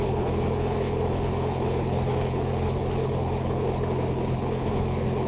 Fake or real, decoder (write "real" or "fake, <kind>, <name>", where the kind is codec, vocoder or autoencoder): fake, codec, HILCodec